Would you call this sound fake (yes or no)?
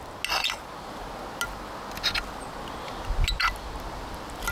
no